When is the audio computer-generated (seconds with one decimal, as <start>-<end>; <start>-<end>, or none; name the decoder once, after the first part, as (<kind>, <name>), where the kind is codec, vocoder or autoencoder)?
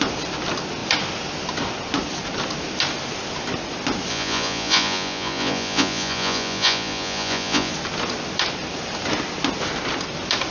4.1-7.7 (vocoder, Vocos)